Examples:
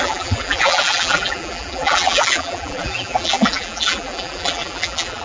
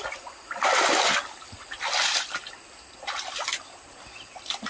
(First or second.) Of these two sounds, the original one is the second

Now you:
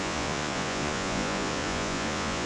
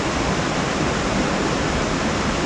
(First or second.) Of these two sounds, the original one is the second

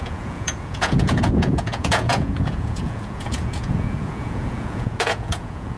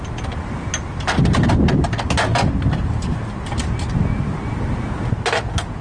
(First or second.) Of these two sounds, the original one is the second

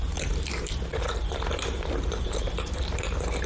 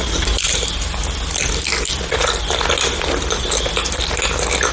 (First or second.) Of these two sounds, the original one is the second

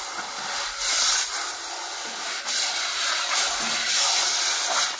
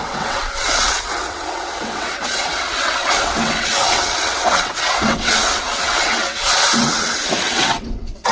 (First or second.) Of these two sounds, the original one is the first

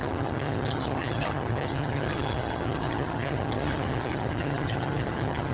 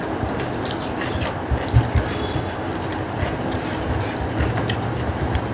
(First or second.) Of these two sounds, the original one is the second